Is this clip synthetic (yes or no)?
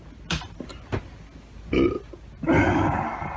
no